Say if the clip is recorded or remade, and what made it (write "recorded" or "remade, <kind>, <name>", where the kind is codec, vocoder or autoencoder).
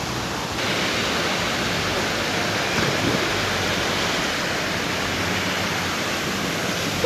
recorded